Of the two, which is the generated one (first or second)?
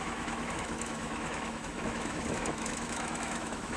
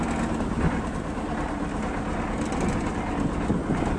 first